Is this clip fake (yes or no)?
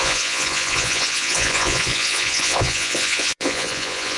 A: yes